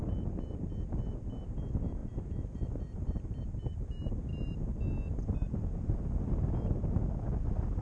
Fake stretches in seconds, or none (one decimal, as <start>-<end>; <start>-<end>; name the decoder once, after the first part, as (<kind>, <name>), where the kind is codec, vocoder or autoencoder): none